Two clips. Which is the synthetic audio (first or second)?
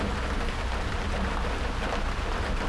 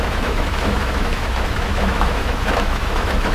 second